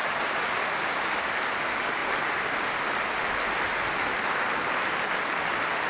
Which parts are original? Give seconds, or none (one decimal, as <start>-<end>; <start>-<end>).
0.0-5.9